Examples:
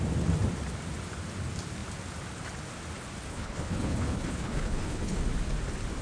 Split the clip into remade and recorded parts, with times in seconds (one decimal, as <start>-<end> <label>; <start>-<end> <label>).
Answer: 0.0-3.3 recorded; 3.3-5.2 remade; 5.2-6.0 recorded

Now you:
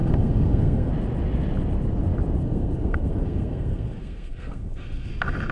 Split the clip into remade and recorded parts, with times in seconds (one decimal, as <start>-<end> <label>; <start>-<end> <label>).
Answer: 0.0-0.9 remade; 0.9-2.4 recorded; 2.4-5.1 remade; 5.1-5.5 recorded

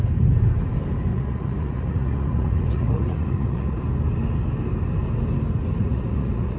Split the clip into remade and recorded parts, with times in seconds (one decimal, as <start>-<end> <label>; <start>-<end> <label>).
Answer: 0.0-1.1 recorded; 1.1-3.8 remade; 3.8-5.8 recorded; 5.8-6.6 remade